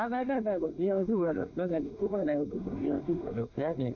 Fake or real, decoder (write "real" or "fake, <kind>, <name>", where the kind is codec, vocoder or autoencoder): fake, codec, SNAC